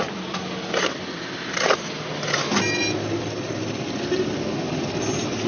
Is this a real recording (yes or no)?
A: yes